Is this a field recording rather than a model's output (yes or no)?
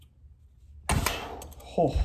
yes